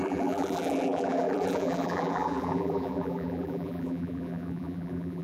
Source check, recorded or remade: remade